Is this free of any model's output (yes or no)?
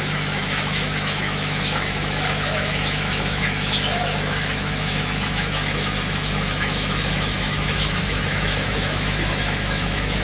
no